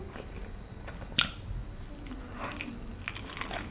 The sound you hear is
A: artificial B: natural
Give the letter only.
B